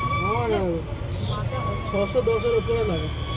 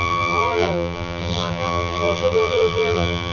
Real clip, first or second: first